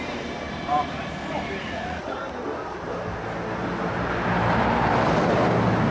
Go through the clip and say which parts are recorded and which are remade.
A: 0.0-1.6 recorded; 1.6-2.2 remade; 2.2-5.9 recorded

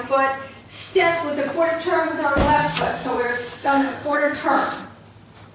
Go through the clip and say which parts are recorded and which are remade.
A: 0.0-0.7 recorded; 0.7-1.2 remade; 1.2-3.6 recorded; 3.6-4.4 remade; 4.4-5.5 recorded

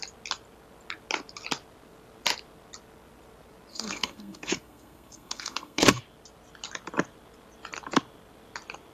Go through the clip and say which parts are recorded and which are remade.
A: 0.0-3.7 recorded; 3.7-6.0 remade; 6.0-8.9 recorded

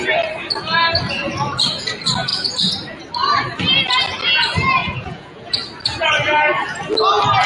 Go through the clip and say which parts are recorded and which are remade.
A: 0.0-4.8 recorded; 4.8-5.5 remade; 5.5-7.5 recorded

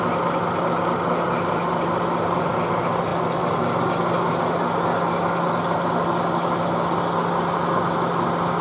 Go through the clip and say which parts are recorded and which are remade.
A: 0.0-8.6 recorded

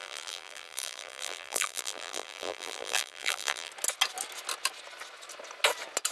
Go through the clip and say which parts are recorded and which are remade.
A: 0.0-3.7 remade; 3.7-6.1 recorded

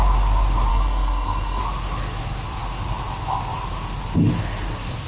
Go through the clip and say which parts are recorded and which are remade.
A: 0.0-0.7 recorded; 0.7-1.6 remade; 1.6-5.1 recorded